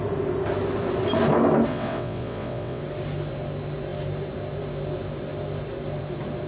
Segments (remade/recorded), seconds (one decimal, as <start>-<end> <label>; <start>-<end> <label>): 0.0-1.7 recorded; 1.7-2.8 remade; 2.8-6.5 recorded